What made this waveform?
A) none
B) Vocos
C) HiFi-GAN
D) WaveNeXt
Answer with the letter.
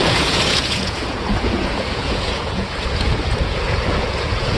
B